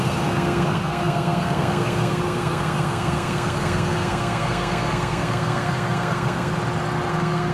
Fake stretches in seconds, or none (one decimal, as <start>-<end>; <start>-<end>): 0.0-6.5; 7.1-7.5